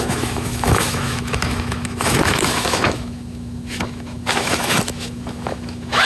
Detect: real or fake fake